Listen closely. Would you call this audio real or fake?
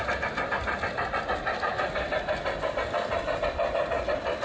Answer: real